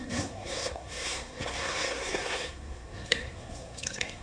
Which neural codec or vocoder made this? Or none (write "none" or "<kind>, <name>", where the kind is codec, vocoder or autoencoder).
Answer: codec, SNAC